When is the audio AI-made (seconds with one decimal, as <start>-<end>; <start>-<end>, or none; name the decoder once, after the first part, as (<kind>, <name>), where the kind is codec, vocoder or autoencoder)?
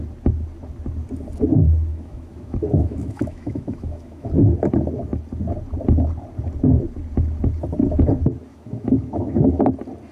1.9-4.3 (autoencoder, DAC-VAE); 8.5-9.7